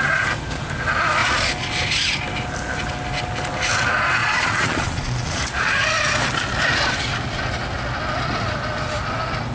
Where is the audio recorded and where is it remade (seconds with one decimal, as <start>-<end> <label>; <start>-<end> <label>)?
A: 0.0-4.2 recorded; 4.2-5.4 remade; 5.4-9.5 recorded